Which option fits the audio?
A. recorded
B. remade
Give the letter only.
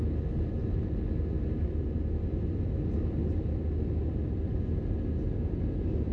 A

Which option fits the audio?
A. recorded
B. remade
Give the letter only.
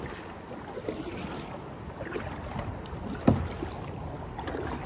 A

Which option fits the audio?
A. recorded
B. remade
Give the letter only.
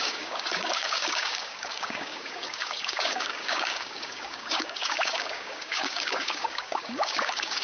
B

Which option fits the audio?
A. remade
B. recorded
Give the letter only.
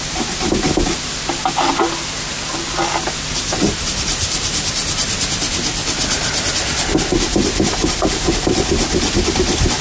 B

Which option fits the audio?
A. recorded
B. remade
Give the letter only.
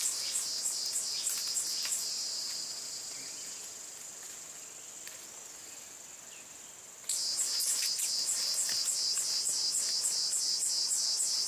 A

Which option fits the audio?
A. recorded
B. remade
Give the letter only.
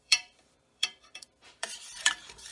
B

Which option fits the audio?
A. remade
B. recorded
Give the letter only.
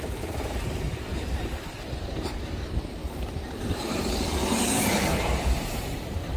A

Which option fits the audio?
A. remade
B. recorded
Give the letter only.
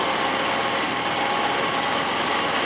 B